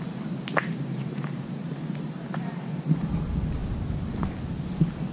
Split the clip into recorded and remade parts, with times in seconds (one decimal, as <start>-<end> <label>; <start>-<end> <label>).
0.0-0.6 recorded; 0.6-3.1 remade; 3.1-5.1 recorded